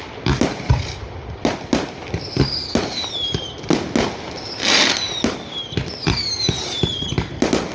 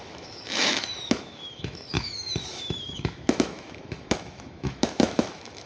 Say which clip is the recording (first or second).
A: first